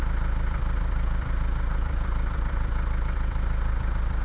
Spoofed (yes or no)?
yes